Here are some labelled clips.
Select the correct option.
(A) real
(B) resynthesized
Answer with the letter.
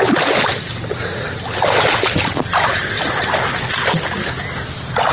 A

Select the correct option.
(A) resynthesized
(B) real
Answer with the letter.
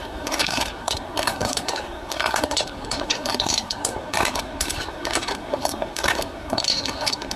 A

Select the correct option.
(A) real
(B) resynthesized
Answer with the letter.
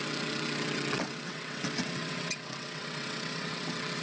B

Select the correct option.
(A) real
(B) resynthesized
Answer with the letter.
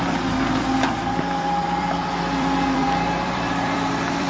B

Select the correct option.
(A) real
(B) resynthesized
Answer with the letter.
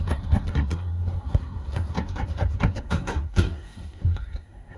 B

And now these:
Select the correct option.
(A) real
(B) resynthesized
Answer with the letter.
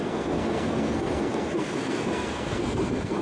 B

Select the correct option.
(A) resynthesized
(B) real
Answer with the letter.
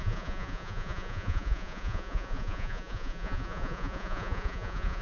A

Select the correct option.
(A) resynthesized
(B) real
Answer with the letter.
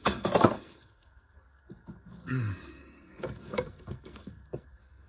A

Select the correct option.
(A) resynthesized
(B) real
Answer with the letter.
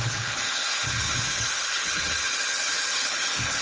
A